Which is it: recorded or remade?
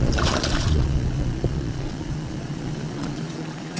remade